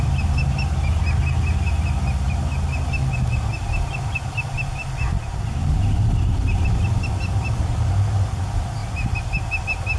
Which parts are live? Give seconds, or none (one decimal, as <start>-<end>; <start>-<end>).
0.0-10.0